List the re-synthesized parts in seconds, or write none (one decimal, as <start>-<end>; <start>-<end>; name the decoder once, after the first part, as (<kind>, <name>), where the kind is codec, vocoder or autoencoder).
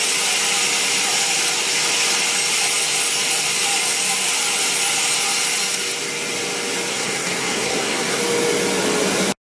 6.9-8.2 (codec, SNAC)